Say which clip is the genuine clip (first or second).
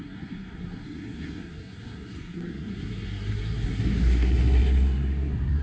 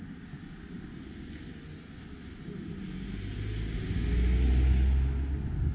second